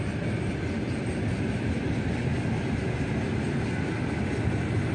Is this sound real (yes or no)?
yes